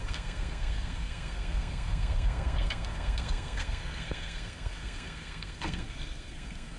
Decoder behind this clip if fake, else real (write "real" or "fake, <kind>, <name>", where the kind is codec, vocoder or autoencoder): fake, codec, SNAC